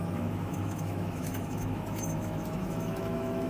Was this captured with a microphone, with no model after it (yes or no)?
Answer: no